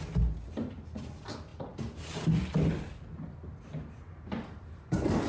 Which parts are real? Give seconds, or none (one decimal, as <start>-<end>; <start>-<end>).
0.0-5.3